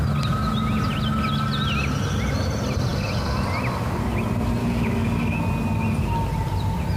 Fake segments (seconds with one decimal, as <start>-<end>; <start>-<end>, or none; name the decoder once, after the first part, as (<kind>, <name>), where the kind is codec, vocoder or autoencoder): 4.6-5.4 (codec, DAC)